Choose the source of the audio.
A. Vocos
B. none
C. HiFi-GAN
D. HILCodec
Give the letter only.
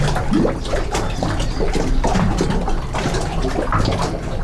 B